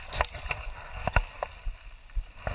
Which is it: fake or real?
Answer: real